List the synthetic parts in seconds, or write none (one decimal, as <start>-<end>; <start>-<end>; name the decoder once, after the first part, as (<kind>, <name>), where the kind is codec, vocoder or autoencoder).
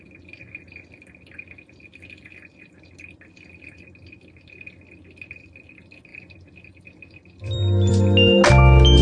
6.1-7.9 (vocoder, BigVGAN v2)